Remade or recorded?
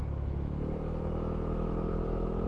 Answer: remade